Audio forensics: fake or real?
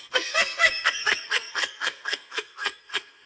fake